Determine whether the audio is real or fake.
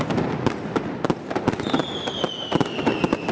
real